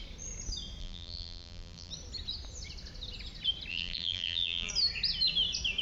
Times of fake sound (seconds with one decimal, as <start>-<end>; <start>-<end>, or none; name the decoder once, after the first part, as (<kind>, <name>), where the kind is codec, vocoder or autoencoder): 0.8-1.9 (vocoder, BigVGAN v2); 3.7-4.7